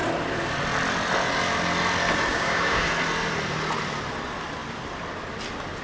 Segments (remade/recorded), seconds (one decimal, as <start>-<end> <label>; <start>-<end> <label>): 0.0-2.3 recorded; 2.3-2.9 remade; 2.9-5.8 recorded